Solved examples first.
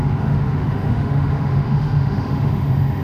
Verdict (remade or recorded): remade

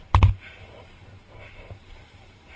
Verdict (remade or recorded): recorded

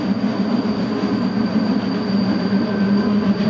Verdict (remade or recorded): recorded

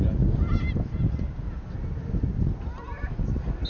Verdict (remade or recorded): recorded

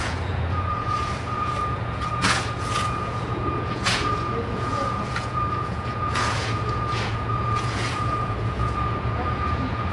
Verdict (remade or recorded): remade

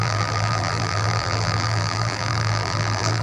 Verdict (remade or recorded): remade